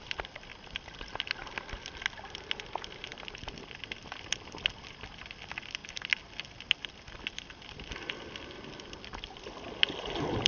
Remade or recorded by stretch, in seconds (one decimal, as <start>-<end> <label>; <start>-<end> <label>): 0.0-10.5 recorded